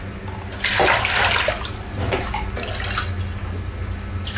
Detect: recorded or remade recorded